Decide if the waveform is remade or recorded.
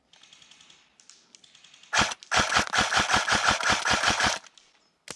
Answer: recorded